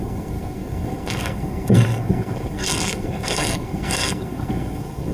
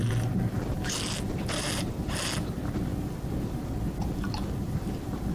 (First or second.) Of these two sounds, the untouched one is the second